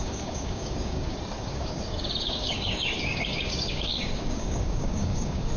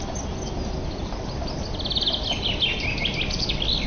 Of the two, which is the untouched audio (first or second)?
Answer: second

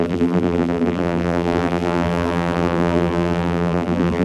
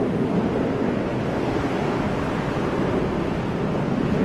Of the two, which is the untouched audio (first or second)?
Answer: second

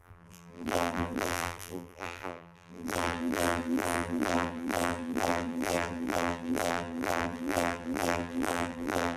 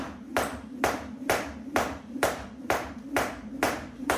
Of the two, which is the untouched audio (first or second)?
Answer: second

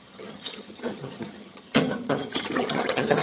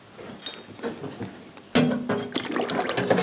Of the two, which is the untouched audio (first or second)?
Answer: second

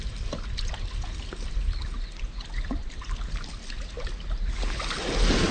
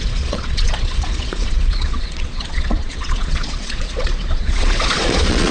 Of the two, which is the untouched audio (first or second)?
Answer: first